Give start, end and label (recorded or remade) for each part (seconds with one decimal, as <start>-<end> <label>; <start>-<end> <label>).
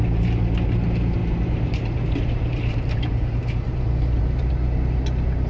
0.0-1.2 recorded; 1.2-4.5 remade; 4.5-5.5 recorded